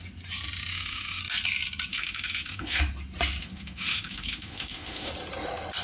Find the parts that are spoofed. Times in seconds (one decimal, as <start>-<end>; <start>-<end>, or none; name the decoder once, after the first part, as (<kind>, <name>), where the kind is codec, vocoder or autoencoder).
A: 0.7-1.2 (autoencoder, DAC-VAE); 1.9-2.8; 3.4-5.1